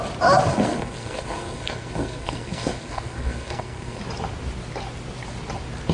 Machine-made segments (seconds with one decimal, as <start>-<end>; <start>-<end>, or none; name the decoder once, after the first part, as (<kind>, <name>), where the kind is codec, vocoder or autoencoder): 0.5-4.0 (codec, SNAC)